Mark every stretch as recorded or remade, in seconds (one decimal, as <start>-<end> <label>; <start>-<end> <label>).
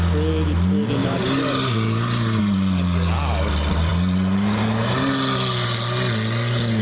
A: 0.0-1.0 recorded; 1.0-2.4 remade; 2.4-6.8 recorded